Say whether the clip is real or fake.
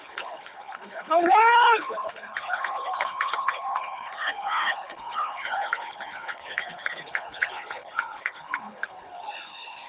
fake